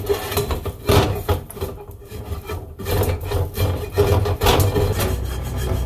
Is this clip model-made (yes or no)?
no